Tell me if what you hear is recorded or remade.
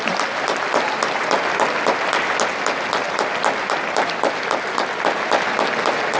recorded